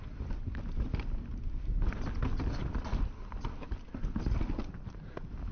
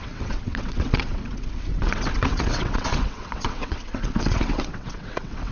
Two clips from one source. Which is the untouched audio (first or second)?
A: first